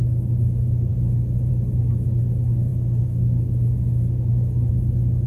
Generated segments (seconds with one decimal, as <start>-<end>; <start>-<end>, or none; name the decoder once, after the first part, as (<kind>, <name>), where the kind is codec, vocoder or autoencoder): none